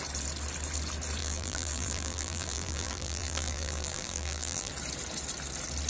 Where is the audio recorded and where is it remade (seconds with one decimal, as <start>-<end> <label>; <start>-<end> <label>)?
0.0-1.2 recorded; 1.2-4.7 remade; 4.7-5.9 recorded